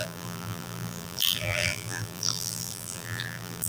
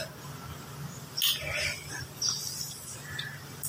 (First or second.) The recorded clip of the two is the second